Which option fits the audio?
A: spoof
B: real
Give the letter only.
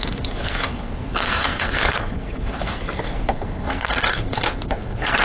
A